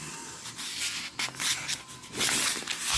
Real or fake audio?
real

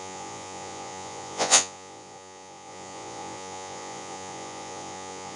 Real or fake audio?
fake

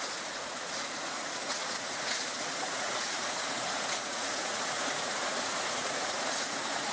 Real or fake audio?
fake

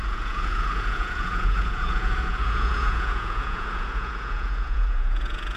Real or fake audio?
fake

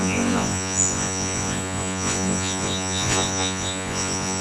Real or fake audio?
fake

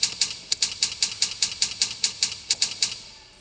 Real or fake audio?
real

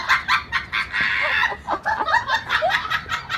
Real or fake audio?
real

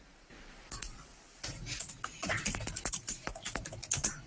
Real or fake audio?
real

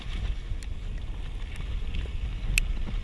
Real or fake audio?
real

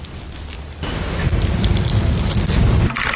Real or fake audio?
real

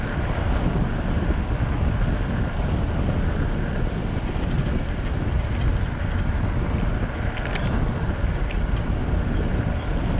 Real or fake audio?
real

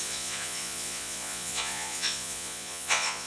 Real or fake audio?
fake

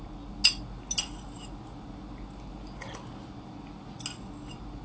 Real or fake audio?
real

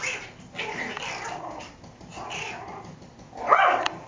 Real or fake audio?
real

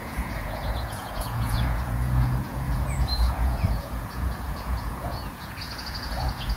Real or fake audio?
fake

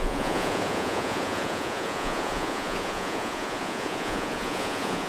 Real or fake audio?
fake